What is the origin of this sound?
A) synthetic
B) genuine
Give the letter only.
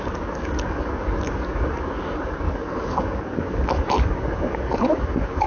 A